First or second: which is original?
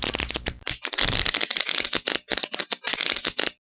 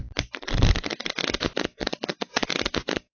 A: first